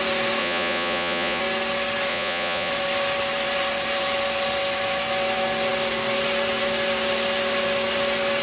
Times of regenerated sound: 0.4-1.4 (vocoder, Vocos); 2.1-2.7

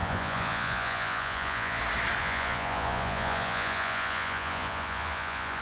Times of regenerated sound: 0.0-1.8 (vocoder, Vocos); 2.2-5.6

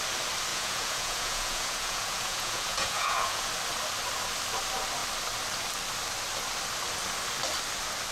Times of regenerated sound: 0.5-3.5 (vocoder, Vocos)

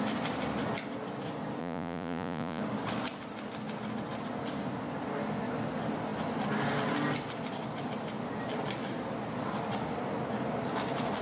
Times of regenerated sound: 1.6-2.6 (vocoder, Vocos)

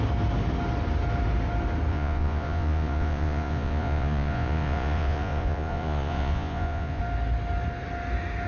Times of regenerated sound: 1.9-7.0 (vocoder, Vocos)